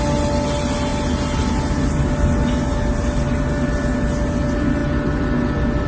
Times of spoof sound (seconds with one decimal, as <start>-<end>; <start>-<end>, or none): none